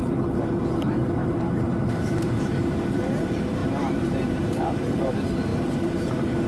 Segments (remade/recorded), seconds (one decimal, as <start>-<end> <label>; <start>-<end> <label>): 0.0-3.0 remade; 3.0-3.6 recorded; 3.6-5.1 remade; 5.1-6.5 recorded